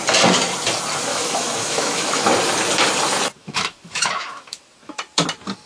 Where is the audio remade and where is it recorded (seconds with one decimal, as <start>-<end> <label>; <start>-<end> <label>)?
0.0-1.1 recorded; 1.1-2.2 remade; 2.2-3.4 recorded; 3.4-4.6 remade; 4.6-5.7 recorded